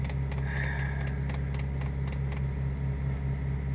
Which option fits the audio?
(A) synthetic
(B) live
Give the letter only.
B